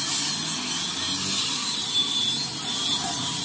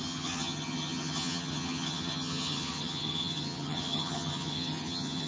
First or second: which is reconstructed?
second